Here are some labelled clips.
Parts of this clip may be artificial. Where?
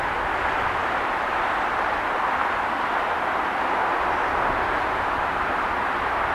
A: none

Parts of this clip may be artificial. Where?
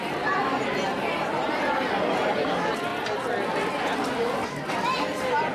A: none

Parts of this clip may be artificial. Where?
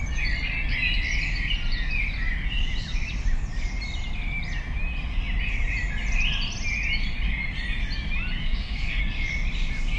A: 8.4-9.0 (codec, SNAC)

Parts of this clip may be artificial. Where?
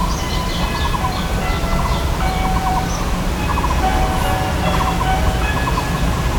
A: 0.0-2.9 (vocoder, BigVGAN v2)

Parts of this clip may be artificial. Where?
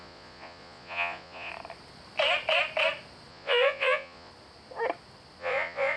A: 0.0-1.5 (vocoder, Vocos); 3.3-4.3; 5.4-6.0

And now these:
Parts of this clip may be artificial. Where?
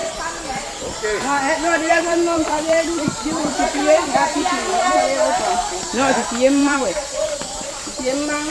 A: 0.0-0.8 (vocoder, BigVGAN v2); 1.9-5.0; 6.6-7.8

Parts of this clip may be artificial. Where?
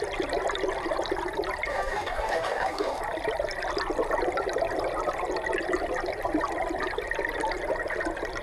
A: 1.7-3.0 (codec, DAC)